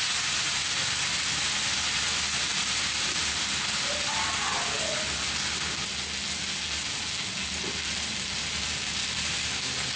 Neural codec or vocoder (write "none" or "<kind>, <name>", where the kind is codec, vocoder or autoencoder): none